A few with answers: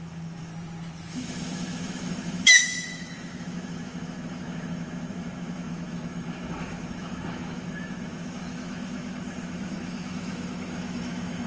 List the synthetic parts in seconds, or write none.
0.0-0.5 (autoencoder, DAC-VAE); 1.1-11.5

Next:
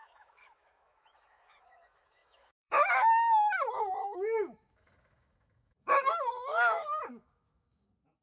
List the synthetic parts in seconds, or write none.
0.0-8.2 (autoencoder, DAC-VAE)

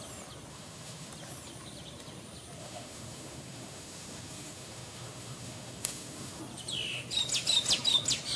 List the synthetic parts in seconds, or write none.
0.5-1.1 (autoencoder, DAC-VAE); 2.6-6.4

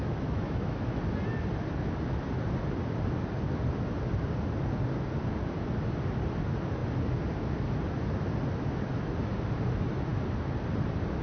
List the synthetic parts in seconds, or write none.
0.0-1.0 (autoencoder, DAC-VAE)

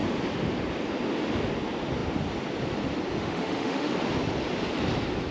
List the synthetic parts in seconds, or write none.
3.2-3.9 (autoencoder, DAC-VAE)